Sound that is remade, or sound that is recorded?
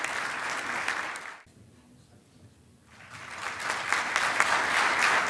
recorded